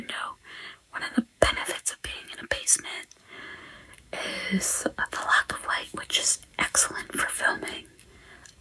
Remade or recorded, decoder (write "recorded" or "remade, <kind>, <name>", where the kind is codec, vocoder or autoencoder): remade, codec, DAC